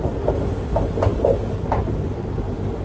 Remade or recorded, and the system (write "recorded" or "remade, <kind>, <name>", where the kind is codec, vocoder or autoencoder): recorded